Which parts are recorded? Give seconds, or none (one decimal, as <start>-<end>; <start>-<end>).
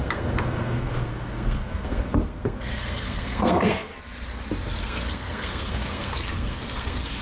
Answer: 3.9-4.8